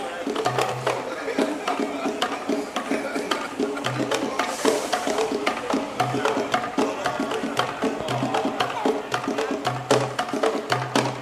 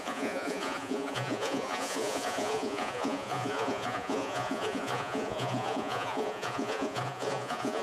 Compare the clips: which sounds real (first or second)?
first